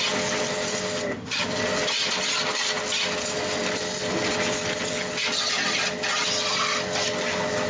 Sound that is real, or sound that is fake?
real